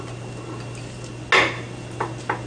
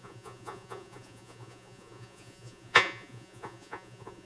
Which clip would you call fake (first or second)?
second